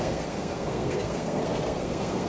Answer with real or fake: fake